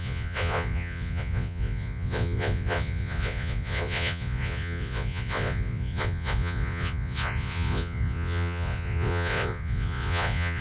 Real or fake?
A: fake